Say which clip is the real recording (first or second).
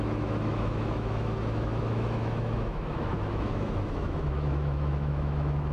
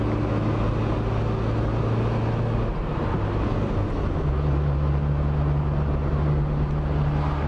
second